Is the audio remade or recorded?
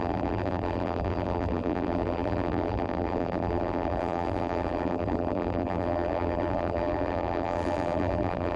remade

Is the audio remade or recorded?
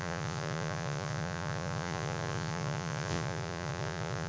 remade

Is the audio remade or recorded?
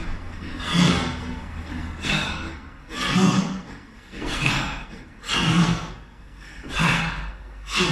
remade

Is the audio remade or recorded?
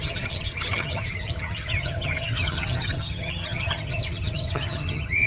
remade